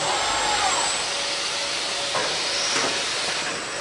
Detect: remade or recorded recorded